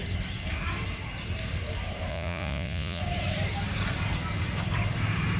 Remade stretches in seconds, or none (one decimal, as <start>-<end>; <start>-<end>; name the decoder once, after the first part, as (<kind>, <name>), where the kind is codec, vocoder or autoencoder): 2.1-3.0 (vocoder, Vocos)